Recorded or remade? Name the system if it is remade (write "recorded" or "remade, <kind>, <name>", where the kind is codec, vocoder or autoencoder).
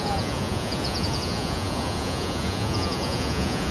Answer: remade, vocoder, Vocos